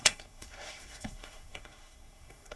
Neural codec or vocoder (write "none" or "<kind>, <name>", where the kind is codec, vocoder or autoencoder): codec, SNAC